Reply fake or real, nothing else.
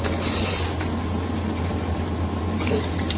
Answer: real